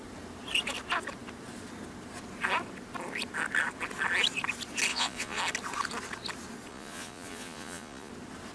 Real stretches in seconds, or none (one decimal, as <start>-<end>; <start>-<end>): 0.0-4.9; 5.4-6.7; 8.1-8.5